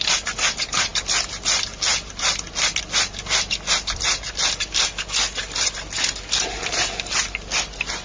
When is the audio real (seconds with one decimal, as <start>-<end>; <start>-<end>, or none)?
0.0-8.0